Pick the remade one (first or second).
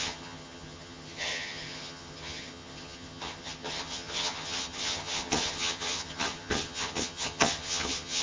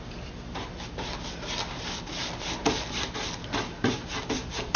first